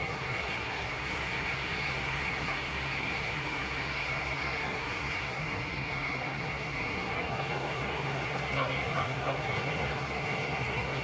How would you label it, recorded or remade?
remade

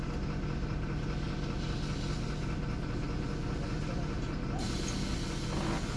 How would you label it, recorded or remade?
recorded